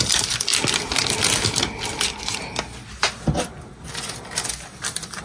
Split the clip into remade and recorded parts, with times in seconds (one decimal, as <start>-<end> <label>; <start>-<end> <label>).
0.0-5.2 recorded